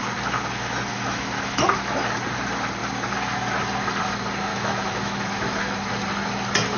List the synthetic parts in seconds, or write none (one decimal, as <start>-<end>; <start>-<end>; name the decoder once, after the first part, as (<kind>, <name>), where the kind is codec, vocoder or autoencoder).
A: 0.9-1.8 (autoencoder, DAC-VAE); 4.5-5.9